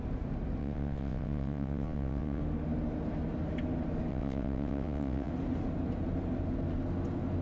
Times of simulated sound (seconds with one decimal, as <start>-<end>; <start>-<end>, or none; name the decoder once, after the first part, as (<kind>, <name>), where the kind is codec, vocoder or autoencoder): 0.6-2.4 (vocoder, WaveNeXt); 4.1-5.3